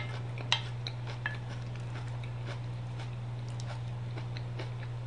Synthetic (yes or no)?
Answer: no